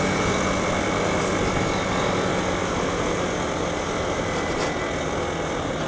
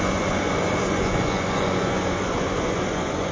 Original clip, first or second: first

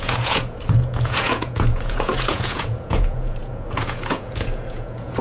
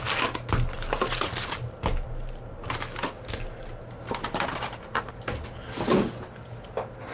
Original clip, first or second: second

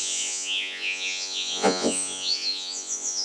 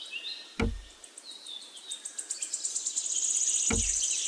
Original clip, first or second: second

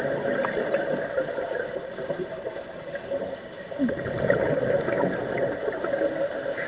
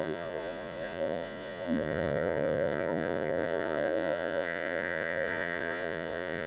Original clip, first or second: first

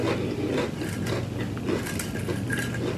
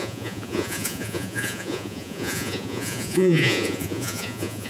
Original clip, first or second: first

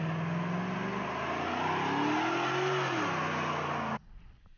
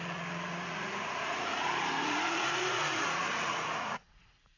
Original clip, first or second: first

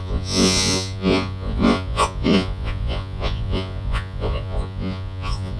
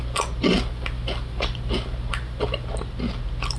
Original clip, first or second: second